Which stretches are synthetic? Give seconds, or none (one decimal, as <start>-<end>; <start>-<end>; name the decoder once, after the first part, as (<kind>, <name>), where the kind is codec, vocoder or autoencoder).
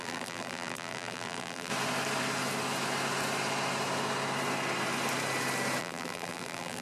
0.0-1.7 (vocoder, BigVGAN v2); 5.8-6.8